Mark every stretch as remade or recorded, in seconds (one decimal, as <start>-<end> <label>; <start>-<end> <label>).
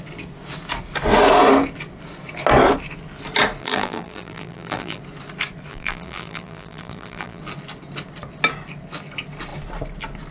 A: 0.0-3.6 recorded; 3.6-5.0 remade; 5.0-5.7 recorded; 5.7-7.4 remade; 7.4-10.3 recorded